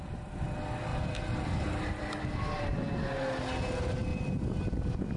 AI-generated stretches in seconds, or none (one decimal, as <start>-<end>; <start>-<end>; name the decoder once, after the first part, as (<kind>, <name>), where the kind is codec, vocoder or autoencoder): 0.9-2.2 (vocoder, BigVGAN v2); 4.1-4.6